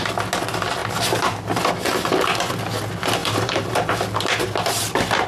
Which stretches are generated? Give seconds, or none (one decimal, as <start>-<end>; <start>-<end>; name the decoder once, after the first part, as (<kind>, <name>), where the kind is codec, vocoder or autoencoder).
3.2-3.9 (vocoder, BigVGAN v2)